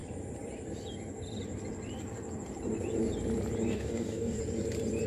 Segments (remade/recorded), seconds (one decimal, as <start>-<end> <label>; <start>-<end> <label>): 0.0-3.7 recorded; 3.7-4.4 remade; 4.4-5.1 recorded